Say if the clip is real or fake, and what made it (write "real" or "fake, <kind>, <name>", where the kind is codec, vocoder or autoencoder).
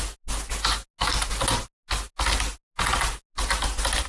real